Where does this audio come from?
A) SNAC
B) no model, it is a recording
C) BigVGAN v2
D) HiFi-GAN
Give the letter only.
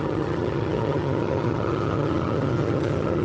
D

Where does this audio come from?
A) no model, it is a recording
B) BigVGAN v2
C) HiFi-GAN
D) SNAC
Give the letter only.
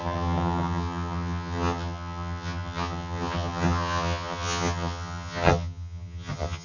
C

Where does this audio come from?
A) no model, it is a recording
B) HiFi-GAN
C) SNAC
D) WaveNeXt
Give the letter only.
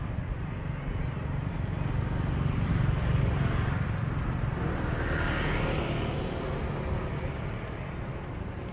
A